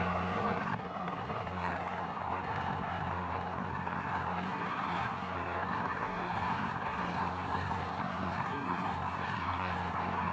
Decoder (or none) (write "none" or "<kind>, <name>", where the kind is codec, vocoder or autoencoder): codec, SNAC